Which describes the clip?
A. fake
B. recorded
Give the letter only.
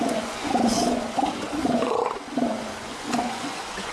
A